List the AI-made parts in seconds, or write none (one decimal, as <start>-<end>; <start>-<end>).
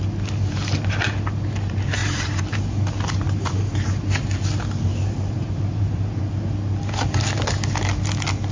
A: 2.0-2.6; 4.9-6.2